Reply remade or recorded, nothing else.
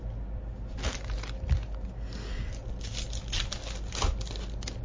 recorded